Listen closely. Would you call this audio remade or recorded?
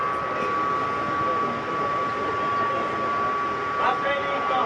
recorded